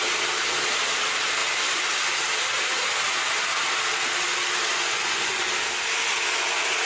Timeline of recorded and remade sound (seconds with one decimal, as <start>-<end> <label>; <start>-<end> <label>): 0.0-4.7 recorded; 4.7-5.5 remade; 5.5-6.9 recorded